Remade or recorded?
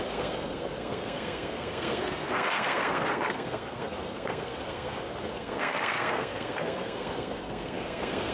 remade